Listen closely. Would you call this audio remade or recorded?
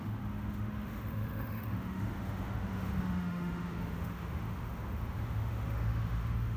remade